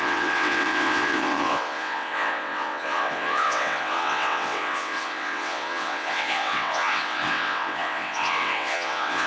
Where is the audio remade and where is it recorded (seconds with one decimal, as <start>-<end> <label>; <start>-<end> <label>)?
0.0-9.3 remade